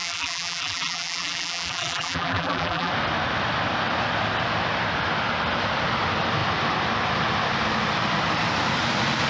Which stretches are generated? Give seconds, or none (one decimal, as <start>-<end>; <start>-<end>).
0.0-2.9